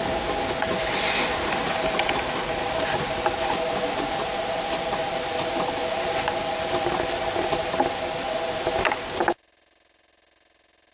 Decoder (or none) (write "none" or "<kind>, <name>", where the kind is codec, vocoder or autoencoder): none